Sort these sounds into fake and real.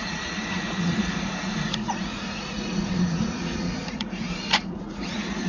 fake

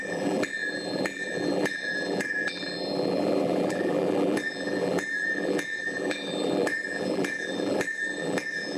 fake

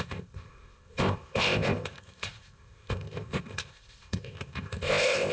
fake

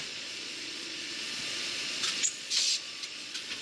fake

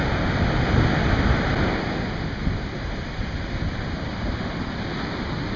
real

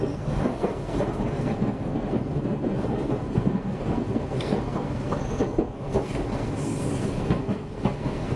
fake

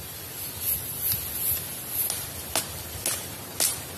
real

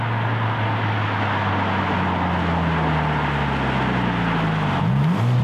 real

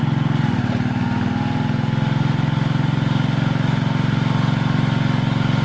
real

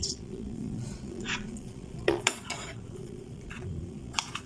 fake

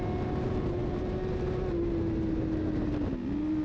real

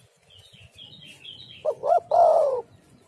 fake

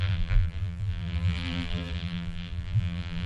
fake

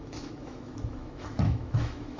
fake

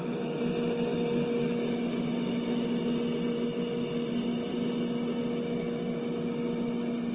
real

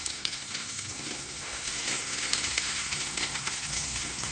fake